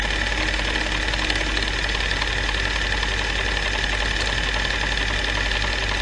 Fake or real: real